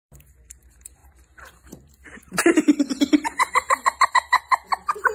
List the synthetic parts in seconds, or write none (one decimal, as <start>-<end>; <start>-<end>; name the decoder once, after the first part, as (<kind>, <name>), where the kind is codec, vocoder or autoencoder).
0.0-5.1 (vocoder, BigVGAN v2)